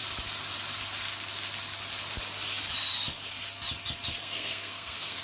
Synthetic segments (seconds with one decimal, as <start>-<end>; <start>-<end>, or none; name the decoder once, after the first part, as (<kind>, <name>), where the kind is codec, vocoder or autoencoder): 4.2-5.2 (codec, SNAC)